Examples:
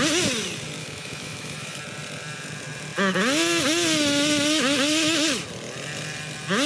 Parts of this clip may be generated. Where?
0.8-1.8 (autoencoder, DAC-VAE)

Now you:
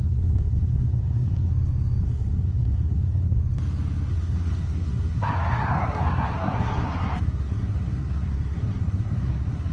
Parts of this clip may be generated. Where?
0.0-1.5 (codec, SNAC); 2.0-3.4; 4.1-9.7